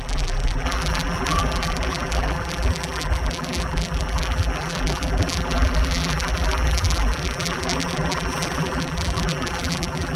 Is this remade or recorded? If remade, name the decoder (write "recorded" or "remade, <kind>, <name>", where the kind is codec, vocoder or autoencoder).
remade, vocoder, BigVGAN v2